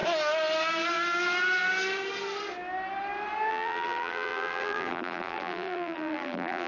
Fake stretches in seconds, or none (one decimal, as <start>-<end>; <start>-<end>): 3.5-6.7